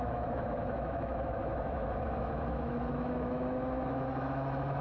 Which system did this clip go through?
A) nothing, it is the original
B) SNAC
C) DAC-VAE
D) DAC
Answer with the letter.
C